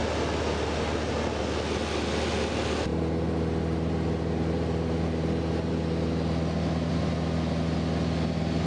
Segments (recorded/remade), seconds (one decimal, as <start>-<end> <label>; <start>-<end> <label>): 0.0-8.7 recorded